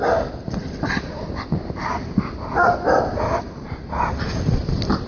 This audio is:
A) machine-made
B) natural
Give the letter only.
B